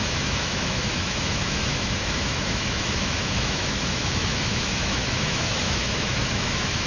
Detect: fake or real fake